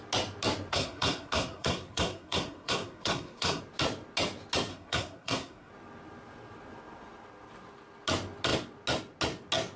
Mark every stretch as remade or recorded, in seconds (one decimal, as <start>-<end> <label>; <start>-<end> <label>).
0.0-0.7 recorded; 0.7-3.6 remade; 3.6-4.7 recorded; 4.7-5.7 remade; 5.7-9.8 recorded